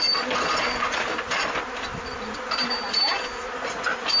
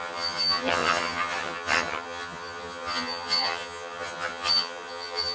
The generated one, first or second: second